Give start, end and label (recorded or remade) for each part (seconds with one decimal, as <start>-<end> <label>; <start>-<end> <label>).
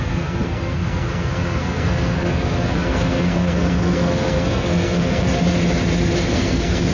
0.0-5.3 remade; 5.3-6.3 recorded; 6.3-6.9 remade